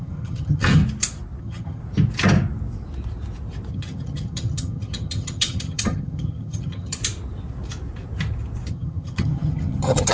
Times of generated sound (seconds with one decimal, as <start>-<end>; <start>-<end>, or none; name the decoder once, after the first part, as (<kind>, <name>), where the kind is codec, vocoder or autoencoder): 0.0-0.8 (vocoder, HiFi-GAN); 1.4-1.8; 3.7-7.0; 8.7-10.1